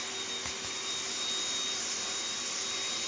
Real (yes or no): yes